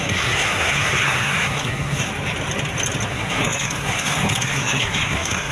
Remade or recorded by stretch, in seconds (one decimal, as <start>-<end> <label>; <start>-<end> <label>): 0.0-2.1 remade; 2.1-3.1 recorded; 3.1-5.5 remade